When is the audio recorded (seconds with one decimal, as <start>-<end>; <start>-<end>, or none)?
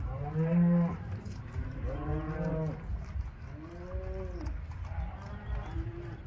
2.1-5.3